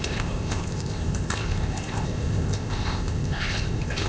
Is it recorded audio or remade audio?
remade